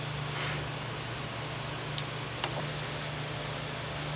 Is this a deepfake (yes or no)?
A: no